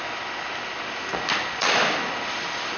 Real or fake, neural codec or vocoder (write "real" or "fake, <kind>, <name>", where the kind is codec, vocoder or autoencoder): real